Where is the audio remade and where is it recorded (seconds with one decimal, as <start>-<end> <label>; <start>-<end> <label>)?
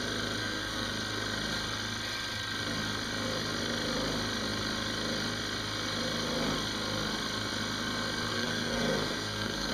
0.0-0.4 recorded; 0.4-0.9 remade; 0.9-8.3 recorded; 8.3-9.7 remade